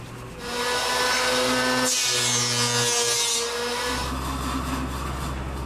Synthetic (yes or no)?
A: no